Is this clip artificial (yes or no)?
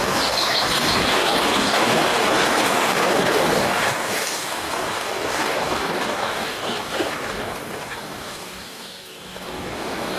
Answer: yes